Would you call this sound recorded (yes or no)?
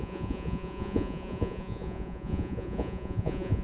no